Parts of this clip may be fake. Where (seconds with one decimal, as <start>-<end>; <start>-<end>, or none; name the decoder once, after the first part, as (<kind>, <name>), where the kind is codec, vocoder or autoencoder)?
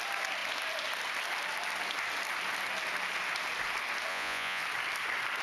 4.1-4.6 (vocoder, Vocos)